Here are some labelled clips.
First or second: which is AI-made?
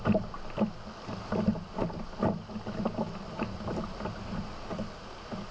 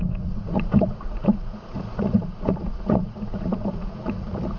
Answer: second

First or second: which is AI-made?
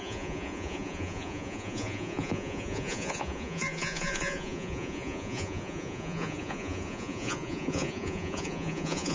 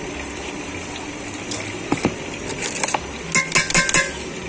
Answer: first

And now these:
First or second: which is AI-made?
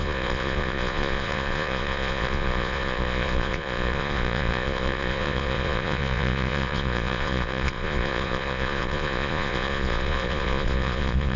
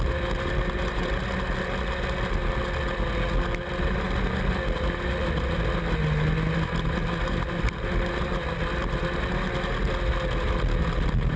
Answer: first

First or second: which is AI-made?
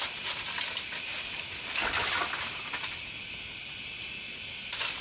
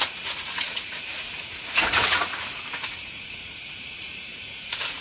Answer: second